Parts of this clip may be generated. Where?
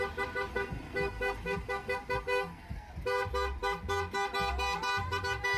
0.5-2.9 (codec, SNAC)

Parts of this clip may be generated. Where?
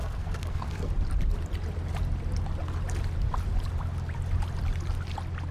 0.0-0.9 (codec, SNAC)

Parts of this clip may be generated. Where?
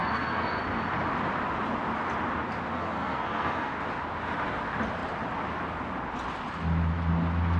0.0-0.6 (codec, SNAC); 2.7-3.8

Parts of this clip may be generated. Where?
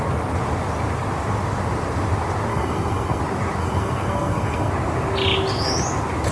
2.5-3.2 (codec, SNAC); 3.6-4.7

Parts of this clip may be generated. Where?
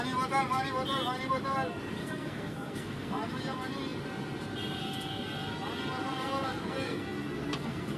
2.0-3.3 (codec, SNAC); 6.0-8.0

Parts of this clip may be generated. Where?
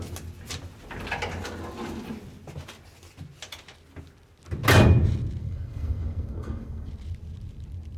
5.4-6.9 (codec, SNAC)